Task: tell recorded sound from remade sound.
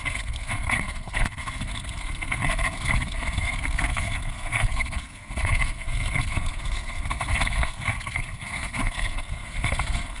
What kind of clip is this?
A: remade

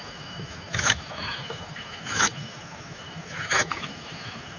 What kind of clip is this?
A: remade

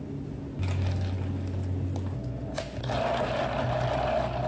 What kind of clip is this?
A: recorded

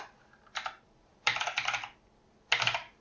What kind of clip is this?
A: recorded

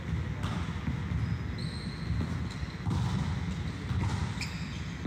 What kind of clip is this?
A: recorded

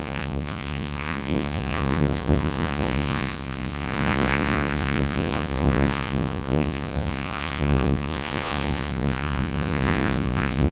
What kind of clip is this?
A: remade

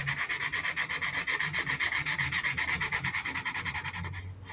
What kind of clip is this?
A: recorded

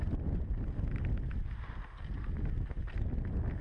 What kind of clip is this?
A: recorded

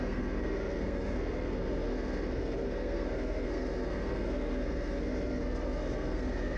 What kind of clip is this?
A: remade